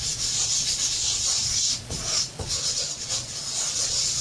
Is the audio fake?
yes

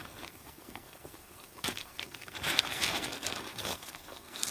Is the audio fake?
yes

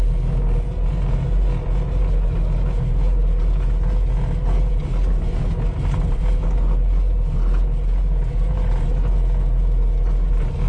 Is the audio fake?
no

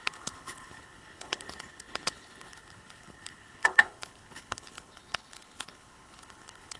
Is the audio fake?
yes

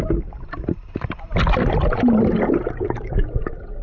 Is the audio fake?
no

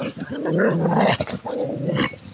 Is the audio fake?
no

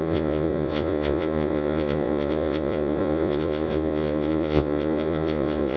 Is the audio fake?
yes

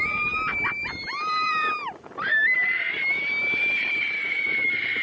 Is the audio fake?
yes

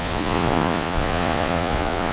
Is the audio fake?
yes